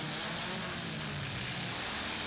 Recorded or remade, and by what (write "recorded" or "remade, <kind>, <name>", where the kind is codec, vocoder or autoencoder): recorded